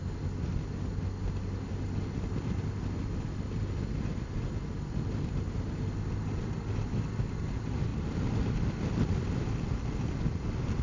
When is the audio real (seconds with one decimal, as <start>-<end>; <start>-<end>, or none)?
0.0-10.8